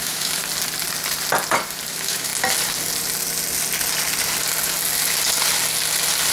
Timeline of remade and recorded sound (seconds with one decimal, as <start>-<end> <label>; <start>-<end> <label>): 0.0-0.4 remade; 0.4-1.9 recorded; 1.9-2.3 remade; 2.3-6.3 recorded